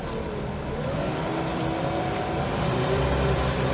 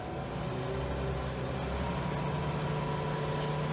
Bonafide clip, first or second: second